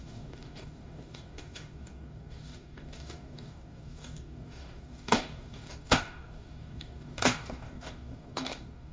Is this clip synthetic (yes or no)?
yes